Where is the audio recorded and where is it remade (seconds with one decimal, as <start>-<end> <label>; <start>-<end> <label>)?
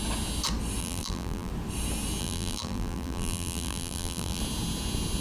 0.0-0.8 recorded; 0.8-1.5 remade; 1.5-2.2 recorded; 2.2-4.4 remade; 4.4-5.2 recorded